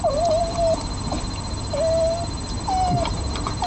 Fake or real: real